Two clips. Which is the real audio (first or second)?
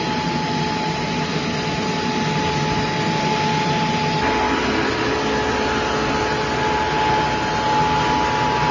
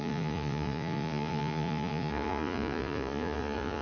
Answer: first